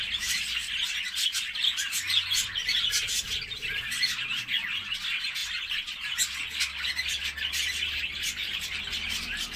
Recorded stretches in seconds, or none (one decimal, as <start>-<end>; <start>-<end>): 0.0-9.6